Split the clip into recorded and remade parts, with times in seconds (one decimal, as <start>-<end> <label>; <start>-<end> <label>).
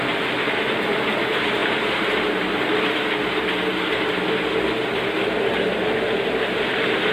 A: 0.0-7.1 recorded